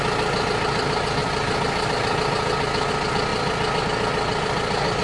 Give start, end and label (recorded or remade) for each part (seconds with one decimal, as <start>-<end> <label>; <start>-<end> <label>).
0.0-5.0 recorded